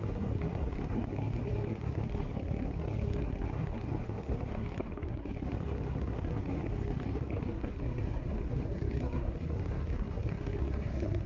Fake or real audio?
fake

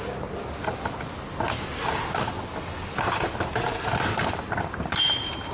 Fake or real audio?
real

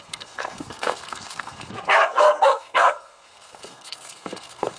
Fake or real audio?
fake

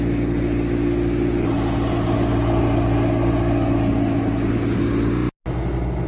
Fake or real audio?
real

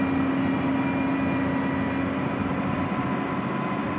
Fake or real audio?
real